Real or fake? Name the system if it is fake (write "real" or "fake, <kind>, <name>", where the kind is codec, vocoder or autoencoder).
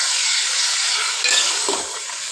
fake, codec, DAC